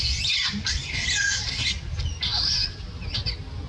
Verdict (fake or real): real